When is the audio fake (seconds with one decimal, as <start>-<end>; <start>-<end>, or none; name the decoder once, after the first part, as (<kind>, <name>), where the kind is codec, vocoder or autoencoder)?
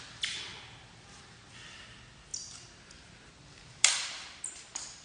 none